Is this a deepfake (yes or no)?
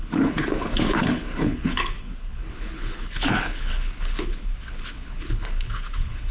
yes